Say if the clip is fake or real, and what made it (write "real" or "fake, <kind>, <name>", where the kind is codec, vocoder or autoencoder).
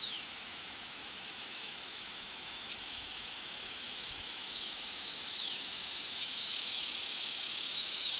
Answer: fake, autoencoder, DAC-VAE